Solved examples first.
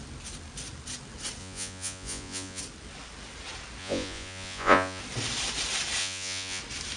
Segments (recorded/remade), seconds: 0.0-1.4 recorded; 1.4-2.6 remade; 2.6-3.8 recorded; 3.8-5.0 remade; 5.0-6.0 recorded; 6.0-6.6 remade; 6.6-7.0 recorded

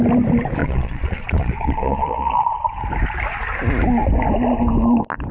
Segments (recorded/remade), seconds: 0.0-0.6 recorded; 0.6-2.7 remade; 2.7-5.3 recorded

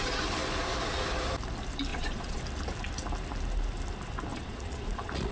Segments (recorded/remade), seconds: 0.0-1.9 recorded; 1.9-2.4 remade; 2.4-4.3 recorded; 4.3-5.3 remade

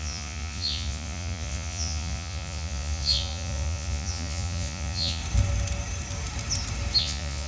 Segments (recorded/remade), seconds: 0.0-5.2 remade; 5.2-7.0 recorded; 7.0-7.5 remade

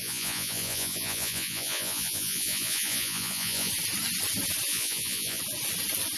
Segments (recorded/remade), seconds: 0.0-3.7 remade; 3.7-4.7 recorded; 4.7-5.4 remade; 5.4-6.2 recorded

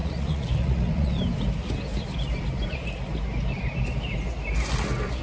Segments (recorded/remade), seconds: 0.0-1.2 remade; 1.2-5.2 recorded